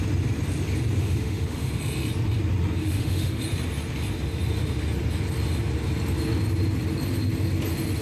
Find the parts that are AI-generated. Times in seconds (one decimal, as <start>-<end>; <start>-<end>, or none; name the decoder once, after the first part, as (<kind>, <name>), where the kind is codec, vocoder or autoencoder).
1.0-1.7 (autoencoder, DAC-VAE); 2.8-3.4